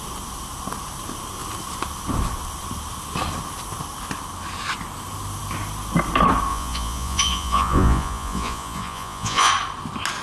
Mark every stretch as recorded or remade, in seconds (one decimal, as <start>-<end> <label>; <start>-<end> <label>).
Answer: 0.0-6.5 recorded; 6.5-9.5 remade; 9.5-10.2 recorded